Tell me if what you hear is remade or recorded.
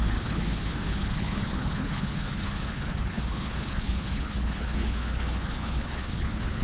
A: remade